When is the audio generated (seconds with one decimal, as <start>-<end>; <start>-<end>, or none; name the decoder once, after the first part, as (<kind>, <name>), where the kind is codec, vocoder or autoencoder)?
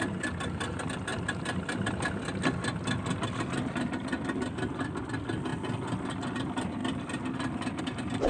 none